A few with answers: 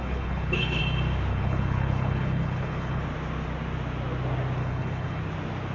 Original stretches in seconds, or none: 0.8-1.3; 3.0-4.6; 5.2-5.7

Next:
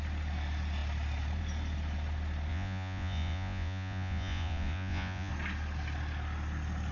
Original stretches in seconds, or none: 0.0-2.5; 5.3-6.9